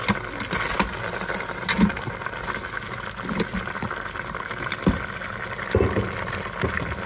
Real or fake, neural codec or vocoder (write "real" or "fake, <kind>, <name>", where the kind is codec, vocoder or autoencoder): real